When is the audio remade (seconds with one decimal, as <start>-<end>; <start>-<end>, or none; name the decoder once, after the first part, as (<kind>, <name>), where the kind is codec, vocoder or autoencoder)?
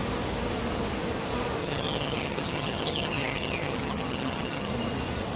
1.6-4.7 (vocoder, HiFi-GAN)